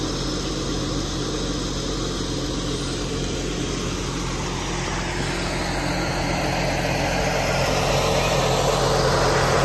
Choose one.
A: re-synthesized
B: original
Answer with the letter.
B